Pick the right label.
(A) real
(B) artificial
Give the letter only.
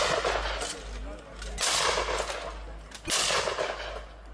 A